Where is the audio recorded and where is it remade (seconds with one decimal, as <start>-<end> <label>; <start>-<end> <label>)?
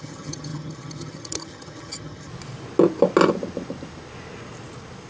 0.0-2.3 remade; 2.3-5.1 recorded